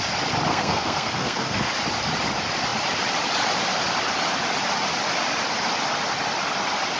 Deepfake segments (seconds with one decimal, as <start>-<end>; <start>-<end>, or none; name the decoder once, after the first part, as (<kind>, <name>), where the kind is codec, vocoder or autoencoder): 0.5-1.7 (codec, SNAC)